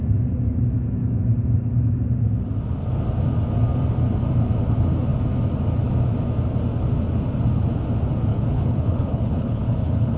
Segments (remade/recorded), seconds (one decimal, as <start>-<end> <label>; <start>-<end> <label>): 0.0-8.3 recorded; 8.3-10.2 remade